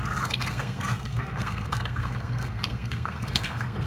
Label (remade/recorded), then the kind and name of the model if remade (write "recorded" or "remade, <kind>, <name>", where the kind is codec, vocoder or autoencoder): remade, codec, SNAC